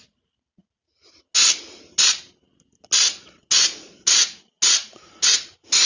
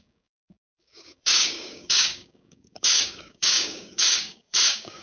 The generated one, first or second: second